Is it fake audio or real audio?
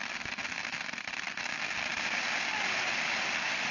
fake